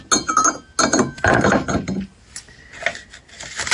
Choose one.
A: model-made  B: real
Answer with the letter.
B